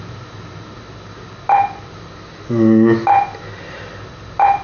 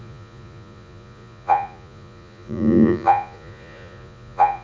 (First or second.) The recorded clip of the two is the first